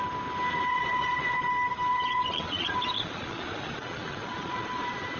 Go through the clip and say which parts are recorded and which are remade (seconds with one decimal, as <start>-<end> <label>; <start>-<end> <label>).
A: 0.0-0.5 recorded; 0.5-1.5 remade; 1.5-1.9 recorded; 1.9-5.2 remade